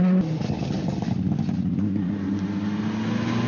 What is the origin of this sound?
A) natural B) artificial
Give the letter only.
A